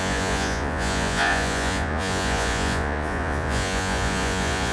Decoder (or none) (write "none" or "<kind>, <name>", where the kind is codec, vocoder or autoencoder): vocoder, Vocos